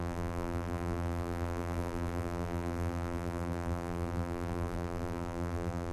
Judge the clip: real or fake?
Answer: fake